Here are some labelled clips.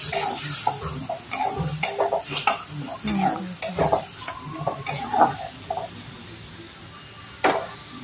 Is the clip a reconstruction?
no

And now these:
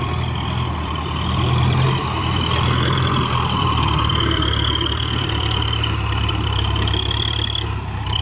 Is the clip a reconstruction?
yes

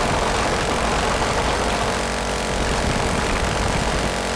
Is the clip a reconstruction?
no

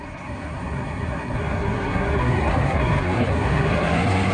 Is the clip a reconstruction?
yes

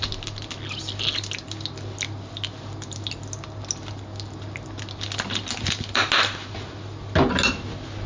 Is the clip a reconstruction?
no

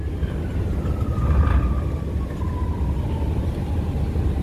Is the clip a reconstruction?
no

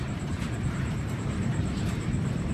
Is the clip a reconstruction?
yes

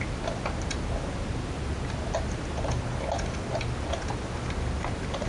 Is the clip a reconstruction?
no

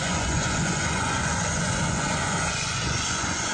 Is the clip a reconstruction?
yes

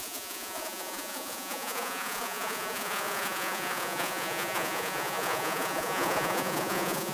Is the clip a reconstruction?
yes